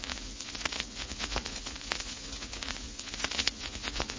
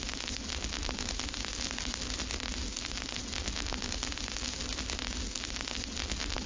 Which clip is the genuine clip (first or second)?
second